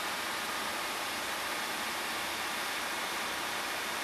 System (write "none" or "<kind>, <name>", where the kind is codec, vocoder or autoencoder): vocoder, BigVGAN v2